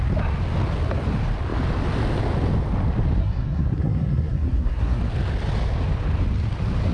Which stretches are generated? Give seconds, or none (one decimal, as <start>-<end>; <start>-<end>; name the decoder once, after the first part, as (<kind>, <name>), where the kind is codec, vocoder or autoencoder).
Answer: 3.2-5.0 (codec, SNAC)